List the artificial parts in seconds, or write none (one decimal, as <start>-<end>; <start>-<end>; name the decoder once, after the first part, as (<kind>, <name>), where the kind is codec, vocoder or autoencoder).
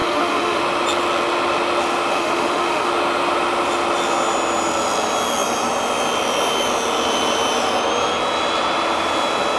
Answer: 0.0-0.6 (autoencoder, DAC-VAE); 2.1-2.9